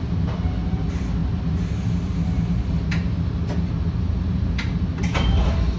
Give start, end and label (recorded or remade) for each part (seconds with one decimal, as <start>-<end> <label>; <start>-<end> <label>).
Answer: 0.0-5.8 recorded